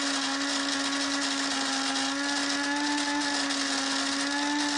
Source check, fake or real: real